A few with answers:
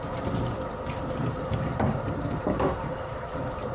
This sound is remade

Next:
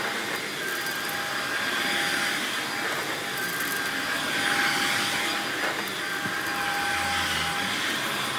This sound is recorded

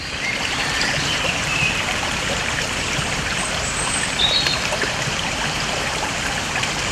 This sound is remade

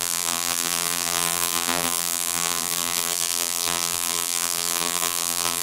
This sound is remade